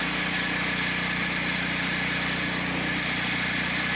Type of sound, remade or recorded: recorded